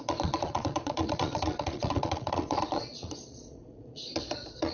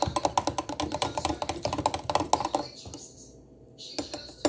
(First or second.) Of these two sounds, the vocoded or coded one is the first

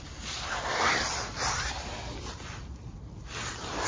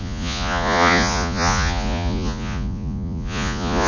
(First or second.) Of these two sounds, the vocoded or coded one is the second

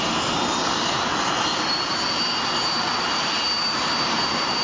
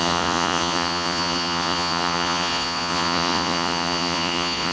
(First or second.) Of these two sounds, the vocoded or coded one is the second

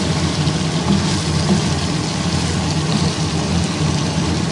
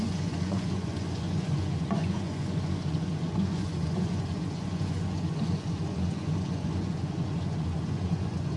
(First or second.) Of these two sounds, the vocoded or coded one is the second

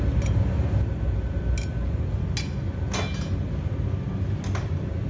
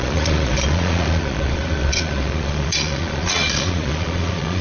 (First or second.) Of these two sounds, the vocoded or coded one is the second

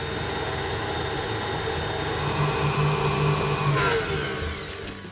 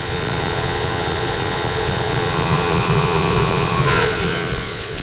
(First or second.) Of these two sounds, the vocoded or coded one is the second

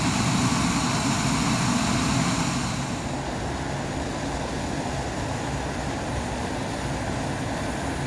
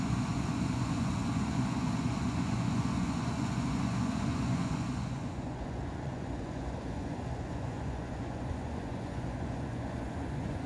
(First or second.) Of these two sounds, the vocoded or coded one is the second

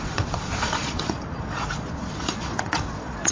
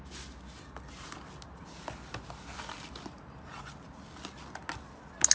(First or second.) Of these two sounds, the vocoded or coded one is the first